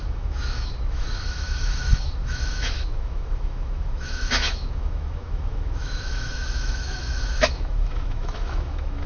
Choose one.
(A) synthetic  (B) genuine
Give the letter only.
A